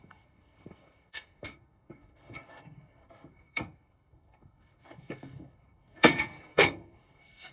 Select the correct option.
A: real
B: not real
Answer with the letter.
B